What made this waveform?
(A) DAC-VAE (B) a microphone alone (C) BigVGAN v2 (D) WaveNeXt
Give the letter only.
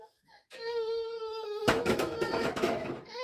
A